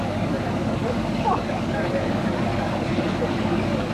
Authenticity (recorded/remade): remade